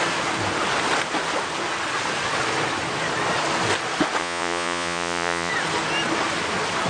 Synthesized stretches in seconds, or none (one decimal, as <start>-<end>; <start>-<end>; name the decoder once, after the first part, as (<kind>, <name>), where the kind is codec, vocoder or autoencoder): 4.2-5.5 (vocoder, Vocos)